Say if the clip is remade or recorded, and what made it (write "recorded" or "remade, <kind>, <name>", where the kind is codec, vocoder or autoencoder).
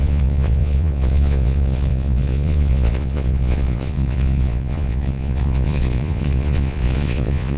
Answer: remade, vocoder, Vocos